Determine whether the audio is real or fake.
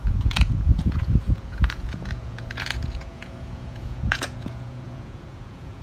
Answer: fake